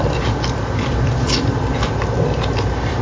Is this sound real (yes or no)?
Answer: no